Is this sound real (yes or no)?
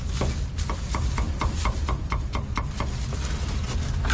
yes